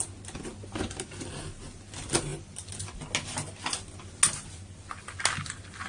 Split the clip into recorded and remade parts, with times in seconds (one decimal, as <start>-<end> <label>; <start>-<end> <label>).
0.0-5.9 recorded